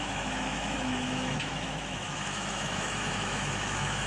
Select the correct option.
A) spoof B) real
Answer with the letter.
A